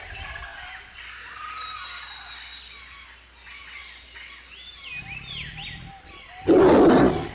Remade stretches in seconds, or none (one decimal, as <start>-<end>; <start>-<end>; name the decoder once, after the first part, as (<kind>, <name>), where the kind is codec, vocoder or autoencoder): 3.8-6.4 (vocoder, BigVGAN v2)